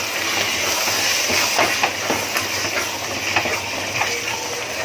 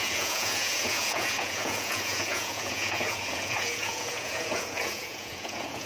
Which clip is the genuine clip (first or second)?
first